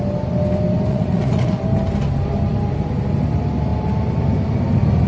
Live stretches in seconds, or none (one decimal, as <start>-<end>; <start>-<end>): 0.0-0.9; 1.6-5.1